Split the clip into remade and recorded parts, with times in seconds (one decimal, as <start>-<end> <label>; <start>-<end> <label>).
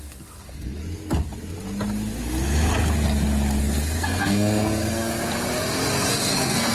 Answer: 0.0-0.8 remade; 0.8-3.6 recorded; 3.6-5.1 remade; 5.1-6.1 recorded; 6.1-6.7 remade